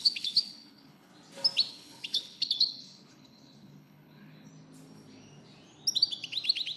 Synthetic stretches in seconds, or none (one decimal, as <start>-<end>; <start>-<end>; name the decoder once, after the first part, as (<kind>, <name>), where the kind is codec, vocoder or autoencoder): 0.0-1.1 (codec, HILCodec); 1.7-4.5